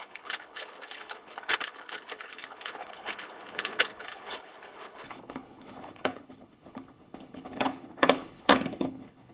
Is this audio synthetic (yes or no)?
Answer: yes